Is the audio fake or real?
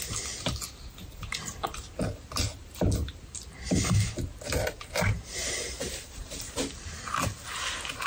real